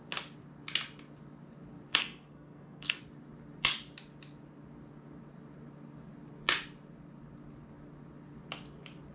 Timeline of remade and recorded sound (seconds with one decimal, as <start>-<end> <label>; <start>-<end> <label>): 0.0-1.9 recorded; 1.9-3.0 remade; 3.0-9.1 recorded